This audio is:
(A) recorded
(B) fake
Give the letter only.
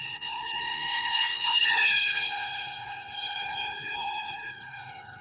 B